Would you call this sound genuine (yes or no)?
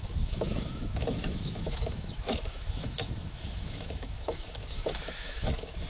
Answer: no